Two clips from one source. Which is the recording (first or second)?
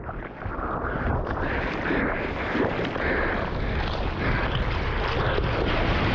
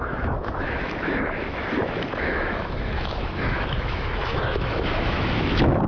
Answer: first